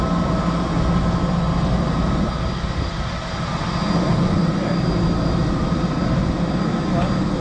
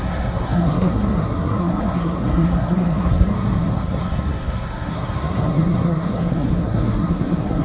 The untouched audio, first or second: first